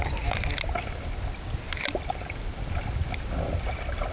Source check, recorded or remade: recorded